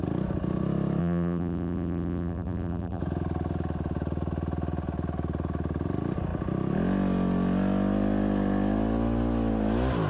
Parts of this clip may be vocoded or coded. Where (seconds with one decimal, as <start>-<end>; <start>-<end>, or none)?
1.0-3.0